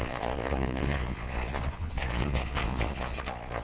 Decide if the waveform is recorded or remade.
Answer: remade